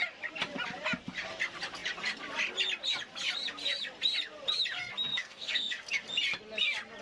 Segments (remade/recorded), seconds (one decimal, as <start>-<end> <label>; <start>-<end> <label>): 0.0-5.1 recorded; 5.1-5.9 remade; 5.9-7.0 recorded